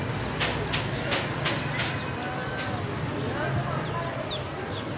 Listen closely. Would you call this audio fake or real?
real